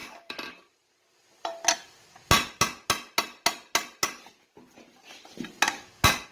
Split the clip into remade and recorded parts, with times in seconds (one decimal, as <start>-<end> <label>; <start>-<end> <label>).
0.0-0.9 remade; 0.9-6.3 recorded